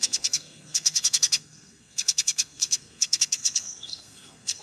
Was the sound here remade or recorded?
remade